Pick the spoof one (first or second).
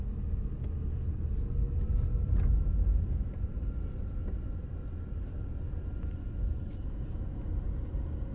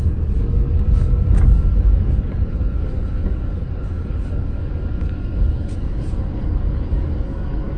second